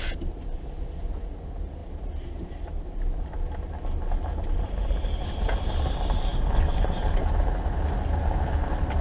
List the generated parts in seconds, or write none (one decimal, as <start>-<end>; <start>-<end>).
none